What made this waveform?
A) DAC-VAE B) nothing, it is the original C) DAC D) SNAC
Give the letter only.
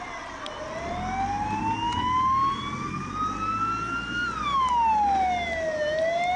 B